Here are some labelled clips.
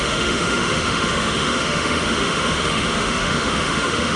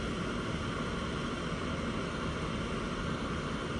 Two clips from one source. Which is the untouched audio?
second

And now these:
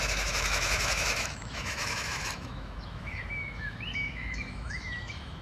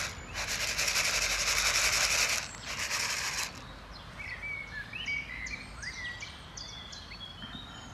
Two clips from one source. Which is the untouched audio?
second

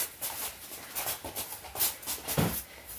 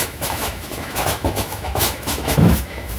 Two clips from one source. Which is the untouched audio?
first